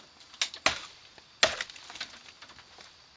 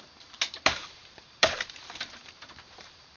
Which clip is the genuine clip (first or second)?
first